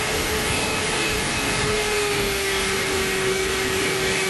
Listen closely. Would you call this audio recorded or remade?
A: remade